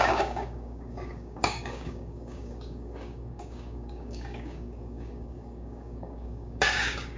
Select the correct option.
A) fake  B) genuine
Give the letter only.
A